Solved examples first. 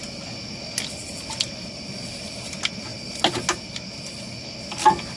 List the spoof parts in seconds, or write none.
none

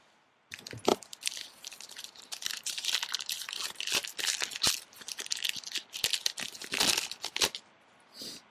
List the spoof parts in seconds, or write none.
0.9-2.9 (vocoder, BigVGAN v2)

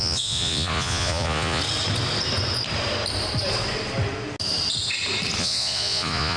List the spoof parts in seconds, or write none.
0.0-1.6 (vocoder, Vocos); 5.4-6.4

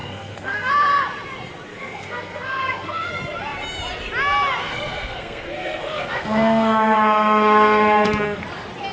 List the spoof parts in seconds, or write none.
0.0-0.7 (codec, SNAC); 1.7-3.1; 4.6-8.4

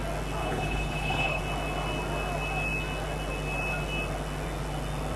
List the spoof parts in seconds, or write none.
0.4-1.4 (codec, HILCodec)

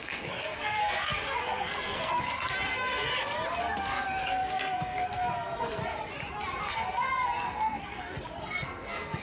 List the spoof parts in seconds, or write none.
0.0-3.1 (codec, SNAC); 3.6-5.8; 6.6-9.2

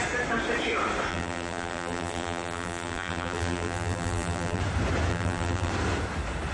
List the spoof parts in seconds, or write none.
1.1-4.6 (vocoder, BigVGAN v2); 5.1-5.7

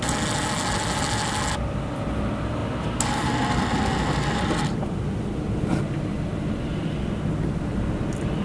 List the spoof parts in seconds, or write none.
none